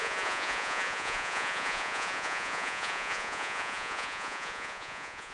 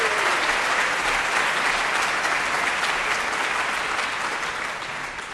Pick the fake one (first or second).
first